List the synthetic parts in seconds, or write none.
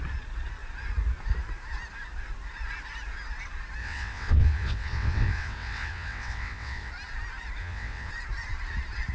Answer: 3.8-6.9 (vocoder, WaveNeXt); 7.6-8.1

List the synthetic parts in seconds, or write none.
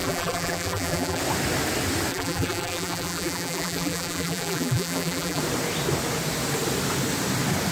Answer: 0.0-1.2 (vocoder, BigVGAN v2); 2.1-5.4